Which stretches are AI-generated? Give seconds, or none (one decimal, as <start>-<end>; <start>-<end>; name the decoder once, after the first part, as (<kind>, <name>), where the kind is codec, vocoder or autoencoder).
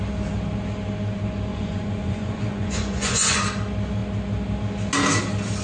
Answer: 1.5-3.4 (vocoder, Vocos)